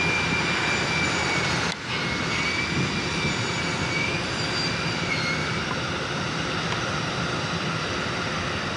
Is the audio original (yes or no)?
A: yes